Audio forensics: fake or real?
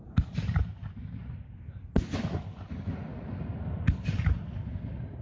real